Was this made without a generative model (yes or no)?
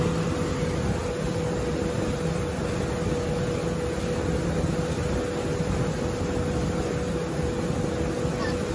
yes